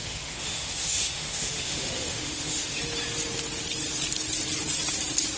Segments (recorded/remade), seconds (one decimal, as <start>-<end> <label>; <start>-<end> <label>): 0.0-2.8 remade; 2.8-5.4 recorded